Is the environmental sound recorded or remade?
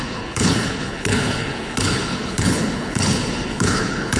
remade